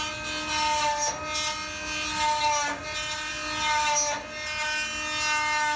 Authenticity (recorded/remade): recorded